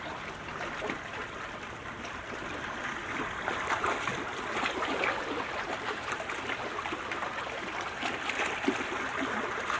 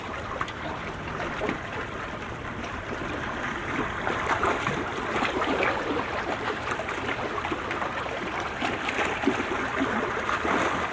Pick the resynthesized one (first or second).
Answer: second